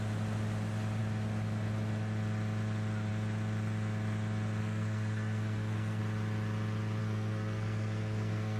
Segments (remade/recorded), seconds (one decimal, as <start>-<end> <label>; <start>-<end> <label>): 0.0-4.6 recorded; 4.6-6.0 remade; 6.0-7.0 recorded; 7.0-8.6 remade